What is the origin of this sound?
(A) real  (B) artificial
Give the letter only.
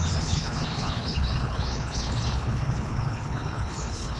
B